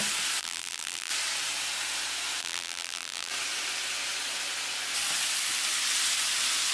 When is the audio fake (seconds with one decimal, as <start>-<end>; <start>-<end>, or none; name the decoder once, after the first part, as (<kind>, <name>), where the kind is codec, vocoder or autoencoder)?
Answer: 0.4-1.1 (vocoder, BigVGAN v2); 2.4-3.3